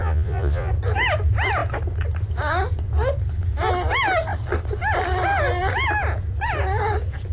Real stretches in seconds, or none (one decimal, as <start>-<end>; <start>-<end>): 0.7-7.3